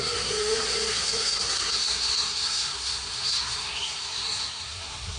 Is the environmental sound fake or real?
fake